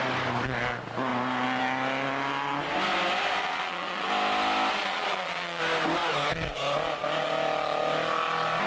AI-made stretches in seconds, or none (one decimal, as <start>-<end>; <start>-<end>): 3.4-4.1; 4.8-5.6